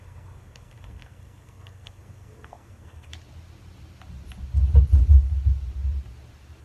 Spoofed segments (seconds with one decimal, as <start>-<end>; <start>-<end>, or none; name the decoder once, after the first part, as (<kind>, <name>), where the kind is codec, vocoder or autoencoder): 0.0-3.1 (codec, SNAC)